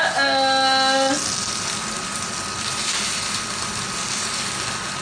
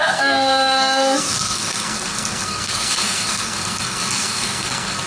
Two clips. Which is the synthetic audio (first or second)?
second